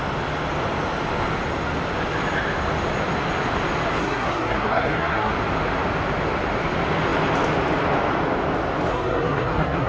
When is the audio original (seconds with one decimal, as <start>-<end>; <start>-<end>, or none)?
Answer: 0.0-4.0; 5.3-8.9